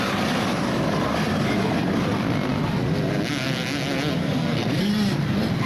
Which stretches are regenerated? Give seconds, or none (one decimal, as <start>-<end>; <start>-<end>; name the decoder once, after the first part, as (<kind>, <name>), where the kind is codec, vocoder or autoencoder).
4.2-4.9 (codec, SNAC)